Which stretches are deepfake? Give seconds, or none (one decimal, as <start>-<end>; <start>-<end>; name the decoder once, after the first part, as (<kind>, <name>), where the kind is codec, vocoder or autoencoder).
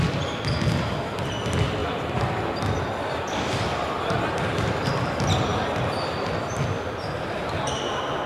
none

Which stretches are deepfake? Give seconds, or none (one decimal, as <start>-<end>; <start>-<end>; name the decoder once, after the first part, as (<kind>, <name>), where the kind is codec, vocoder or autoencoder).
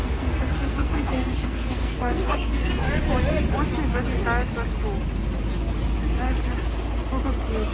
0.0-2.7 (codec, SNAC)